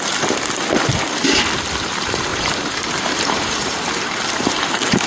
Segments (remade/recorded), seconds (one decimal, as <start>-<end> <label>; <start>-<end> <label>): 0.0-2.3 recorded; 2.3-4.6 remade; 4.6-5.1 recorded